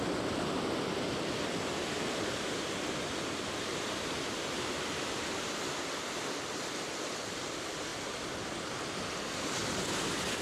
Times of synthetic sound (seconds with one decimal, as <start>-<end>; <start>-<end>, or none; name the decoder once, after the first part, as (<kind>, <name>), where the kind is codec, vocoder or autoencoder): 0.0-7.9 (vocoder, BigVGAN v2); 9.7-10.4